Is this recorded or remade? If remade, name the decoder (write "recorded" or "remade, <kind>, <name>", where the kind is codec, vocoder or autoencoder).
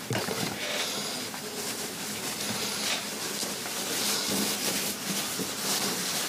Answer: recorded